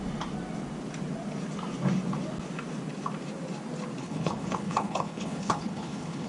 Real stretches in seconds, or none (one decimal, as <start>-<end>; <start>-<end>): 0.0-4.0